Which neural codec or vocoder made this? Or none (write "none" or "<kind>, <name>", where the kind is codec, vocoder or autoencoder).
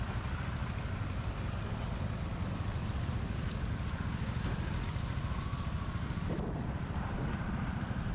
none